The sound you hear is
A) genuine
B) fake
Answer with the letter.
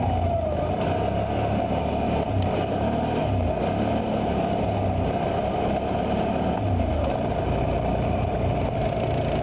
A